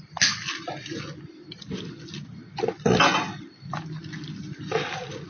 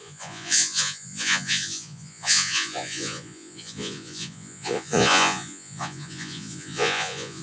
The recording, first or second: first